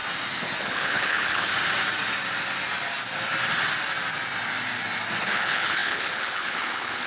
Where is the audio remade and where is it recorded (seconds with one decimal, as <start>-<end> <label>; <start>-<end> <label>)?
0.0-0.6 recorded; 0.6-1.5 remade; 1.5-5.2 recorded; 5.2-7.1 remade